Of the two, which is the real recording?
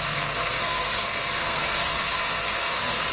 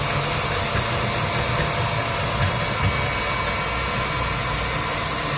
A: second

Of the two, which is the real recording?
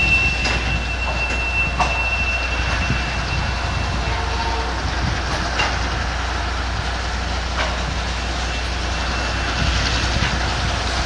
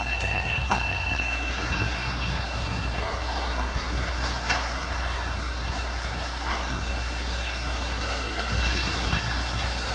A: first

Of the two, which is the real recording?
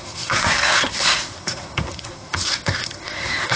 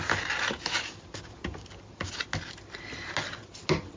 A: second